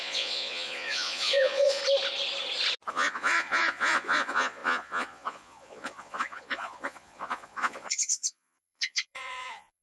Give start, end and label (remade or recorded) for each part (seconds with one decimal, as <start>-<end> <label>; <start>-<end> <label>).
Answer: 0.0-1.8 remade; 1.8-2.9 recorded; 2.9-9.8 remade